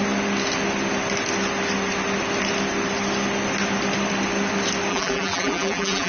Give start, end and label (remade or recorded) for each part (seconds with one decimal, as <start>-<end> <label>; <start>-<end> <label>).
0.0-4.9 recorded; 4.9-6.1 remade